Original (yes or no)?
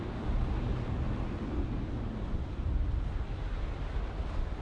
yes